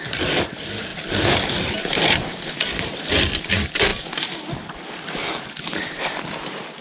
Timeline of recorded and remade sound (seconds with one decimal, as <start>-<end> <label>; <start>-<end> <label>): 0.0-0.9 recorded; 0.9-3.5 remade; 3.5-6.8 recorded